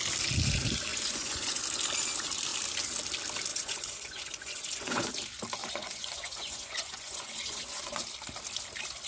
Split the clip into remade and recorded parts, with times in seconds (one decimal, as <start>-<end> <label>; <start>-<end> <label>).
0.0-0.9 recorded; 0.9-1.6 remade; 1.6-3.5 recorded; 3.5-5.1 remade; 5.1-5.6 recorded; 5.6-8.0 remade; 8.0-9.1 recorded